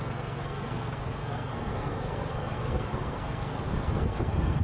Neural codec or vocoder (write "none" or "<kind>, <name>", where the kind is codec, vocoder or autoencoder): codec, SNAC